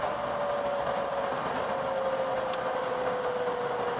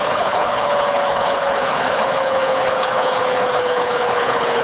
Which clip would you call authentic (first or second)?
first